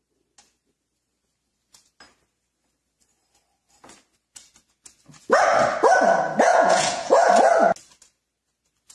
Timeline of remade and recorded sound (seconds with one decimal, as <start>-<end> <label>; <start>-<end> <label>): 0.0-6.5 recorded; 6.5-7.3 remade; 7.3-8.9 recorded